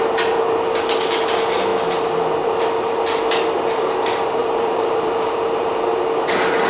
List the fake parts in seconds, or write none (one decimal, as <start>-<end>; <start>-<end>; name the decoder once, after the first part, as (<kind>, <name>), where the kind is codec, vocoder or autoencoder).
4.4-5.9 (vocoder, BigVGAN v2)